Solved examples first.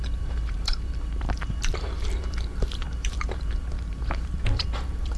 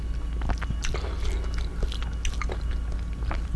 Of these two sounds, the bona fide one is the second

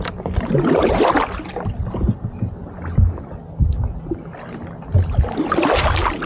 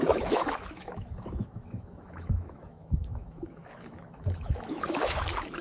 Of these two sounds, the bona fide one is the first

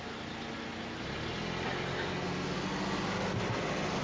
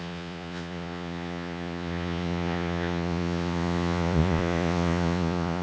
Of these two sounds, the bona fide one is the first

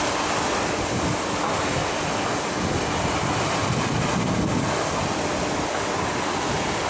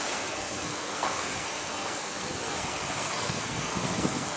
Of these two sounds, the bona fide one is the first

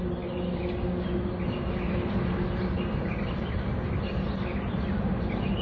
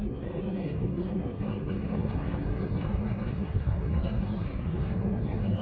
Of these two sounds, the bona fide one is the first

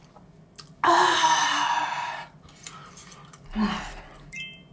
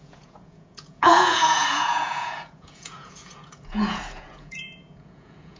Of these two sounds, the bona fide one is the first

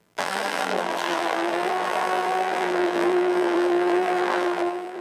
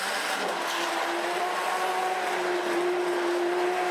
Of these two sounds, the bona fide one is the second